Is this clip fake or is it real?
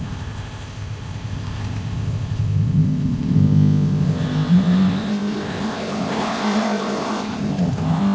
fake